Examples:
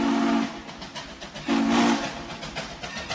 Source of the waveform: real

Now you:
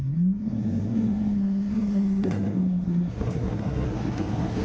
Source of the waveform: fake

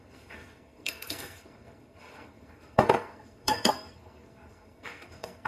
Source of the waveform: fake